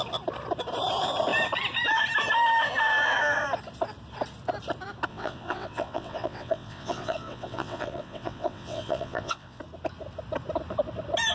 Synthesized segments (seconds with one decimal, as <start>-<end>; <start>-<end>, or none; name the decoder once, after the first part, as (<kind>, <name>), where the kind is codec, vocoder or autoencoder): 5.1-9.6 (vocoder, WaveNeXt)